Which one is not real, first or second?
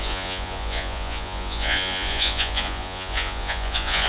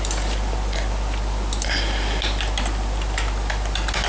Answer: first